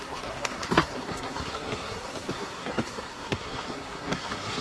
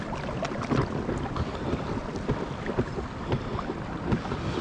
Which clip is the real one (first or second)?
second